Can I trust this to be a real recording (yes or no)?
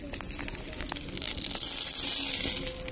yes